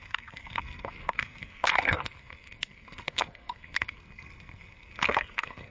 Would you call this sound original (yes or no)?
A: no